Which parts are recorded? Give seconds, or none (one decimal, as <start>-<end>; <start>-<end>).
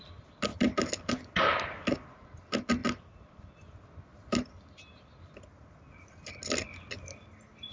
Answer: 0.0-7.7